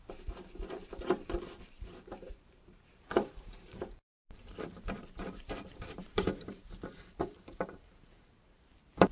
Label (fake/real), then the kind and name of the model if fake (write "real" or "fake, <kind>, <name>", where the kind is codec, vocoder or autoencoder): fake, vocoder, BigVGAN v2